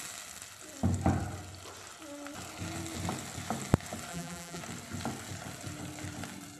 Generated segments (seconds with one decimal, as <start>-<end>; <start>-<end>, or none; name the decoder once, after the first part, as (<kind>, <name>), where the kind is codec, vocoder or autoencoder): 4.1-4.6 (vocoder, BigVGAN v2)